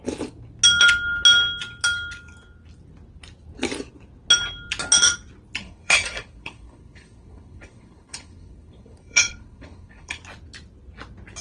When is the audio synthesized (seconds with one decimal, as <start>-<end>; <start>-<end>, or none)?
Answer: 5.6-10.2